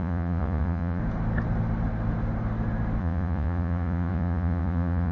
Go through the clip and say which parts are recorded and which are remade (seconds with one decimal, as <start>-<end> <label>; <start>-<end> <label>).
0.0-1.0 remade; 1.0-3.0 recorded; 3.0-5.1 remade